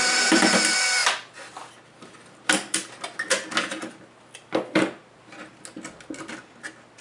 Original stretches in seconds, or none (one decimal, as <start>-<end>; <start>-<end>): 0.0-7.0